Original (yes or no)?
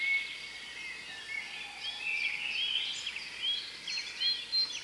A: yes